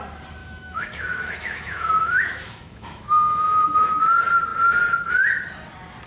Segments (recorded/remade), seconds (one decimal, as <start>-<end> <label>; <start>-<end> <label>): 0.0-0.4 recorded; 0.4-4.0 remade; 4.0-6.1 recorded

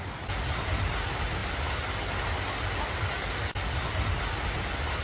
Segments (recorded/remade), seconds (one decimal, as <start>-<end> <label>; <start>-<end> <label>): 0.0-5.0 recorded